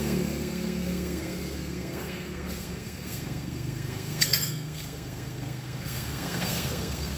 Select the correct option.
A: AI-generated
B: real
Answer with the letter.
A